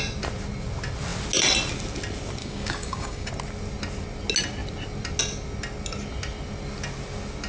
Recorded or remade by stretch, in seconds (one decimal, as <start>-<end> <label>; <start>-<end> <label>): 0.0-2.4 recorded; 2.4-3.3 remade; 3.3-7.5 recorded